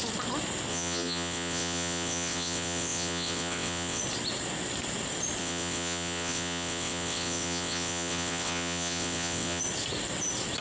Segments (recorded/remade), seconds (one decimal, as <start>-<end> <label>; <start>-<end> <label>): 0.0-0.7 recorded; 0.7-4.0 remade; 4.0-5.4 recorded; 5.4-9.6 remade; 9.6-10.6 recorded